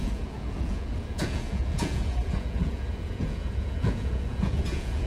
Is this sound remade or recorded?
remade